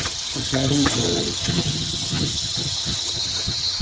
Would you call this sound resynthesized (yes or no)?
yes